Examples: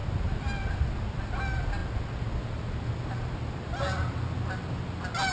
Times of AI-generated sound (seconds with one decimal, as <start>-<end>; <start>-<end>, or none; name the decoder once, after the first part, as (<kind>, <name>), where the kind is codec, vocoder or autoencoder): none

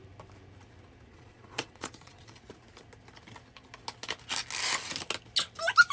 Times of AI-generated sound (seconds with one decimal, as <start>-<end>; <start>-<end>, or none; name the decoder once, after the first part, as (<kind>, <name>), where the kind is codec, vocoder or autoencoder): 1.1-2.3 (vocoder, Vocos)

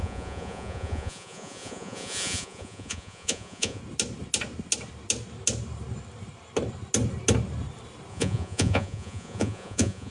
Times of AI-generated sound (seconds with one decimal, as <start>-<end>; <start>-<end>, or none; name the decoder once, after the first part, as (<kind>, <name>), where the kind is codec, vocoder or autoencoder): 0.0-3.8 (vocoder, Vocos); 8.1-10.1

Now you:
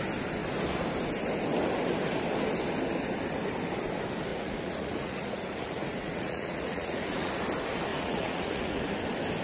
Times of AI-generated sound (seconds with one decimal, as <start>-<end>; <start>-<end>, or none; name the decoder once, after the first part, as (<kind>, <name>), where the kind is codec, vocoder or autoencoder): 4.3-7.3 (vocoder, Vocos); 7.9-8.8

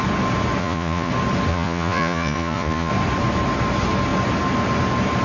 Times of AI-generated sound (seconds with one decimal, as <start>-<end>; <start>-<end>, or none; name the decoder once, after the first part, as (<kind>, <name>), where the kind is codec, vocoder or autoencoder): 0.6-1.1 (vocoder, Vocos); 1.5-2.9

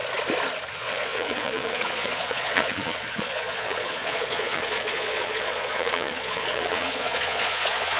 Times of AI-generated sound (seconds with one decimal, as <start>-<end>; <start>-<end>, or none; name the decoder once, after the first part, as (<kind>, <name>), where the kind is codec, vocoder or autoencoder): 0.7-8.0 (vocoder, Vocos)

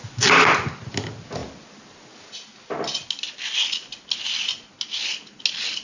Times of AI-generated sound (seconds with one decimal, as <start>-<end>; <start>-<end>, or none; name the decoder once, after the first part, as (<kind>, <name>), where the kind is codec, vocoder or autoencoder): none

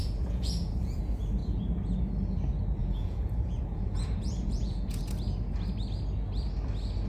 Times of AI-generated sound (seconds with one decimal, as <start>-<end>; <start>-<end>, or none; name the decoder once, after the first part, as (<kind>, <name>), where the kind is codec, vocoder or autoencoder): 0.0-1.0 (vocoder, Vocos); 2.8-5.0